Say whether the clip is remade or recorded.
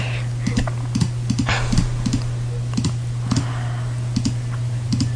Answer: recorded